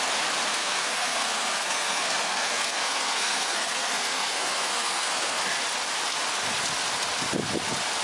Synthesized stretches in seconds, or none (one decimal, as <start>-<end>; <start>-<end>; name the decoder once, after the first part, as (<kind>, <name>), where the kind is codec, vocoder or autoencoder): 0.6-5.4 (codec, SNAC)